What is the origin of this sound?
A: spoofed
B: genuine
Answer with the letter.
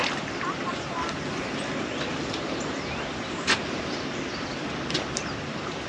B